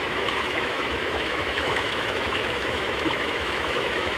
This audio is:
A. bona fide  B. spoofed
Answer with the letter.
B